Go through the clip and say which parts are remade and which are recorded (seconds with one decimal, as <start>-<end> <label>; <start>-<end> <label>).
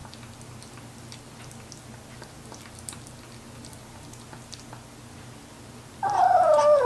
0.0-6.9 recorded